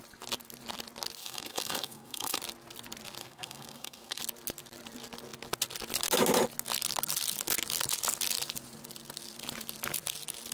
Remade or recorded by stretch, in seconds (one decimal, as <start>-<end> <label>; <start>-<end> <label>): 0.0-1.2 recorded; 1.2-2.4 remade; 2.4-3.2 recorded; 3.2-4.2 remade; 4.2-10.5 recorded